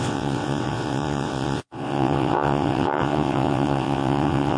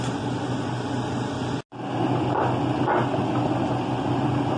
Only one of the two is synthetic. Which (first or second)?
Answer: first